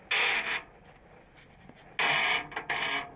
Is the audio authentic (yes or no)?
yes